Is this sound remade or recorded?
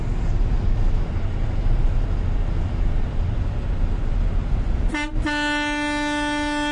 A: recorded